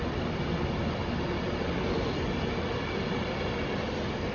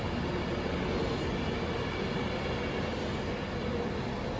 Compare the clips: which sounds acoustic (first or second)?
second